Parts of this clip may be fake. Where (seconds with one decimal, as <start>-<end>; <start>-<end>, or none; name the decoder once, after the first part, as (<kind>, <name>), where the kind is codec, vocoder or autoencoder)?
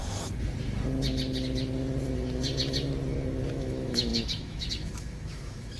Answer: 3.5-5.8 (autoencoder, DAC-VAE)